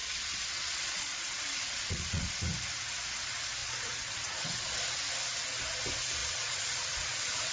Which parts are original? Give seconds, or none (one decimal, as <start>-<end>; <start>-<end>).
2.3-3.6; 5.0-6.2